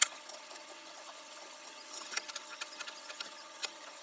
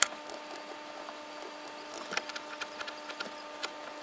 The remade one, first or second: first